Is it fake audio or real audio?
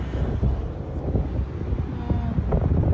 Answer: real